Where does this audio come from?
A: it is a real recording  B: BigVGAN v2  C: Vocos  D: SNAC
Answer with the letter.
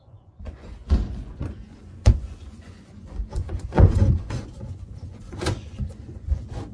C